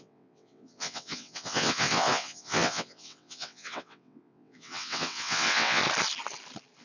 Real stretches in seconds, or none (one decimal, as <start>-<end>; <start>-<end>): 5.8-6.8